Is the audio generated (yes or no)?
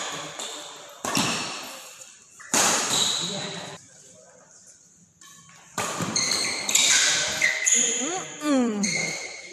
yes